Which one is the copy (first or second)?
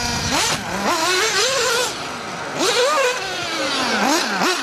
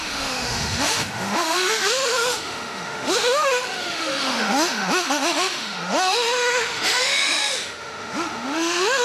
second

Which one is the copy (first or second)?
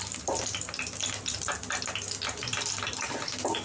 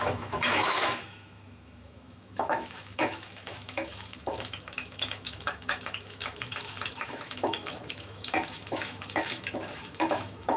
second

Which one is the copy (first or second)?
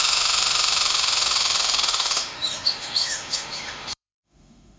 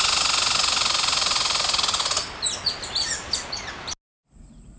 first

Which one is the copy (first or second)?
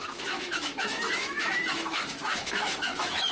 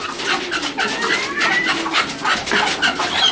first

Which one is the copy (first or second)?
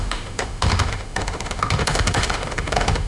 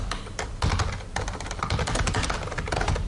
first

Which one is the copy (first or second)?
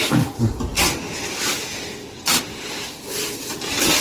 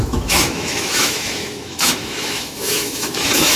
second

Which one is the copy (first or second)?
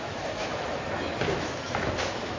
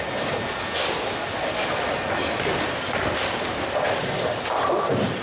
first